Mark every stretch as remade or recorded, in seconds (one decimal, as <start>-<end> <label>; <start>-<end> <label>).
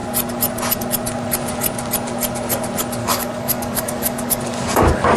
0.0-3.0 recorded; 3.0-5.2 remade